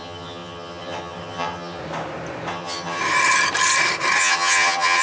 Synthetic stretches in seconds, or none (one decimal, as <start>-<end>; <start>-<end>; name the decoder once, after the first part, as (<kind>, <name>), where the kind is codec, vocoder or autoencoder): 0.0-1.8 (vocoder, HiFi-GAN); 2.5-3.0; 4.2-5.0